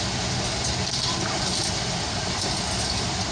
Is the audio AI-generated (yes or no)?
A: no